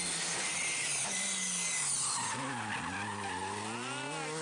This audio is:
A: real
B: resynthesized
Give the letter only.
A